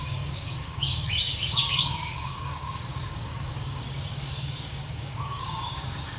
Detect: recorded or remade remade